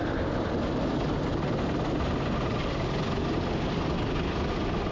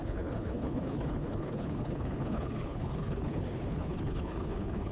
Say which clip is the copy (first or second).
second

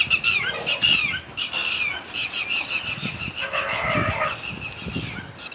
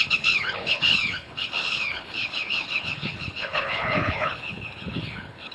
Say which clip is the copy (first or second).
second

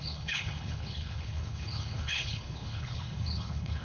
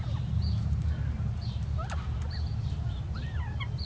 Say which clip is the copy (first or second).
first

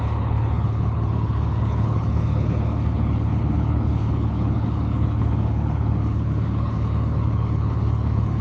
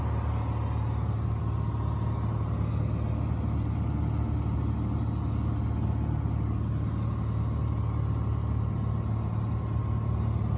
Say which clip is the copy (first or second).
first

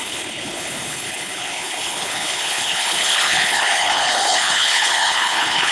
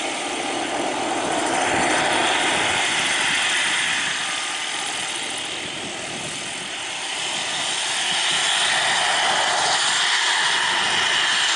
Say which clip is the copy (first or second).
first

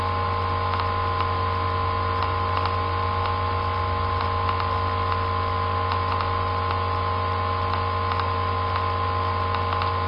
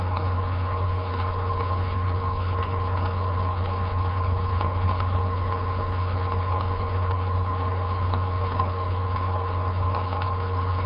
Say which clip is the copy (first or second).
second